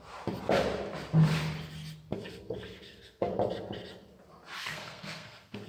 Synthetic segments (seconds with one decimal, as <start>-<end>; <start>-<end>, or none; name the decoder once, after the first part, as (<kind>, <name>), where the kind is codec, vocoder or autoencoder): 2.1-3.3 (codec, SNAC); 4.6-5.7